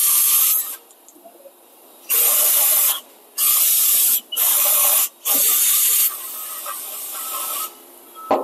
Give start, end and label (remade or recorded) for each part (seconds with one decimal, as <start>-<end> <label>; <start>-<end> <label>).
0.0-8.4 recorded